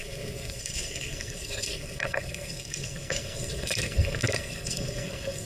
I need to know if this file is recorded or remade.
remade